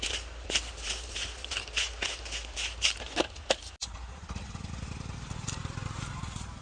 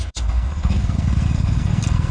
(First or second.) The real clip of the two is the first